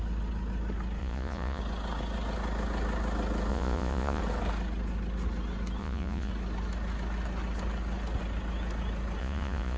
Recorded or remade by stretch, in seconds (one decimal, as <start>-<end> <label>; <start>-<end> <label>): 0.0-1.0 recorded; 1.0-1.6 remade; 1.6-3.5 recorded; 3.5-4.2 remade; 4.2-5.8 recorded; 5.8-6.3 remade; 6.3-9.2 recorded; 9.2-9.8 remade